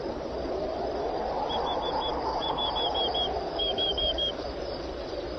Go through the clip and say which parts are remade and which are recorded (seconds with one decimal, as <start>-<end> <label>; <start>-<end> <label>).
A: 0.0-2.1 recorded; 2.1-2.7 remade; 2.7-3.5 recorded; 3.5-4.3 remade; 4.3-5.4 recorded